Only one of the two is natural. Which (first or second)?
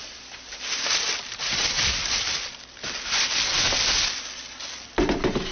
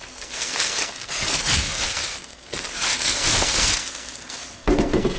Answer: first